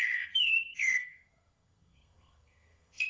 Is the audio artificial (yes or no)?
yes